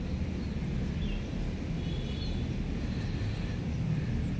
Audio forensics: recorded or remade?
recorded